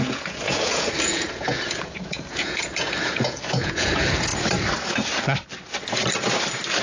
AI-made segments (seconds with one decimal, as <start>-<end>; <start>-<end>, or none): 0.0-4.3